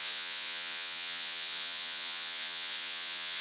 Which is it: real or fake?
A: fake